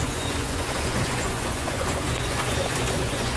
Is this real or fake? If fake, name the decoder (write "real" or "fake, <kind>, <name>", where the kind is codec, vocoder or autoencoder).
fake, vocoder, Vocos